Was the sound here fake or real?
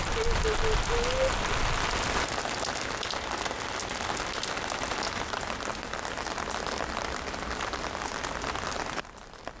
real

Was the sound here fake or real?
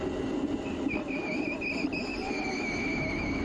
real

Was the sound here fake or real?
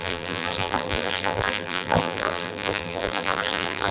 fake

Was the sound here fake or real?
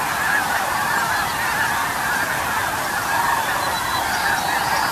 real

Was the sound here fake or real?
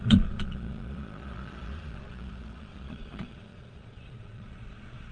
fake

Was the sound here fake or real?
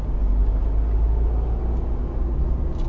real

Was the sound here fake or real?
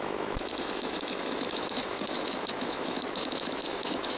fake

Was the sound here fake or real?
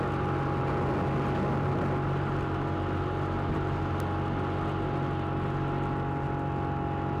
real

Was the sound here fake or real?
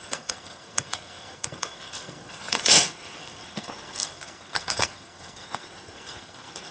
fake